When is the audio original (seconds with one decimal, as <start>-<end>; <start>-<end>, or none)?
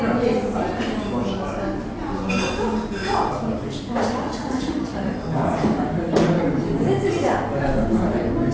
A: 0.0-4.2; 5.1-8.5